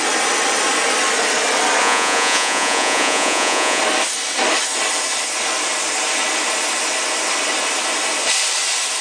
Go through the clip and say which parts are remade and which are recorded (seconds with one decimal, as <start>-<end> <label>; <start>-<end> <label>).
0.0-1.8 recorded; 1.8-3.8 remade; 3.8-9.0 recorded